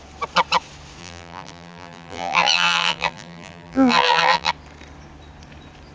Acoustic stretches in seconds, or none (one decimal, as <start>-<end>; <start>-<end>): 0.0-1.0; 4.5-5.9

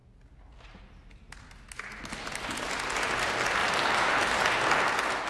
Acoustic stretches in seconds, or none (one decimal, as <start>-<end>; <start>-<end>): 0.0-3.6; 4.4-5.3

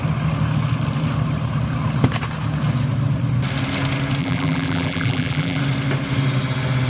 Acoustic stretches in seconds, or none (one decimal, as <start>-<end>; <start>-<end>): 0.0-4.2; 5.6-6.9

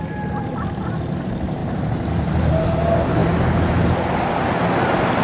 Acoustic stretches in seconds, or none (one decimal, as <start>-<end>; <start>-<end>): 0.0-5.2

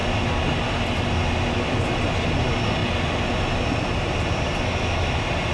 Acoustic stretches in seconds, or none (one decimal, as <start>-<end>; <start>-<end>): 0.0-5.5

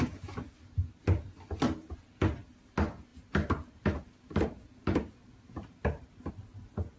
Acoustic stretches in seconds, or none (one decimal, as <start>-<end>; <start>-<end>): 0.0-3.1; 6.3-7.0